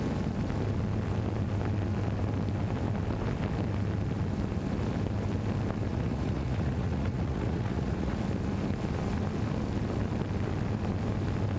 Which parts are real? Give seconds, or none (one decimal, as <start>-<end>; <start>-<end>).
0.0-5.9; 8.2-11.6